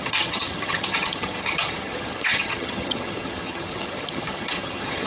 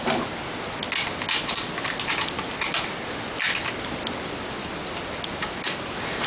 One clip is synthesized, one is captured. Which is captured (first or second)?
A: second